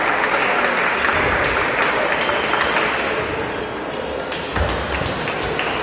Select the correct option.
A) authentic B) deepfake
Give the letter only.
A